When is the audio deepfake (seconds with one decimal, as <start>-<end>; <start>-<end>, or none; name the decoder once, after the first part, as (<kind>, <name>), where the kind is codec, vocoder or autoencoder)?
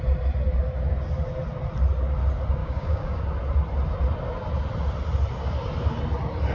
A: 2.6-3.2 (codec, DAC)